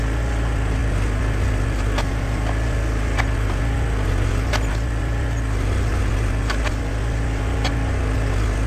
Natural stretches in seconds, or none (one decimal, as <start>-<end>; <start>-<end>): 0.0-8.7